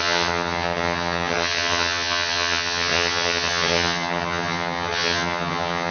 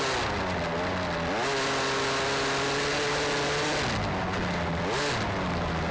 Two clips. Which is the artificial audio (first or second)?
first